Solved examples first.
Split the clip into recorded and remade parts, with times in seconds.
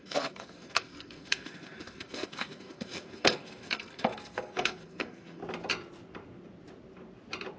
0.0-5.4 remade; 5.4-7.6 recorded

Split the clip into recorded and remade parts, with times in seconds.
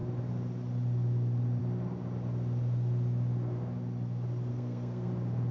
0.0-4.5 recorded; 4.5-5.1 remade; 5.1-5.5 recorded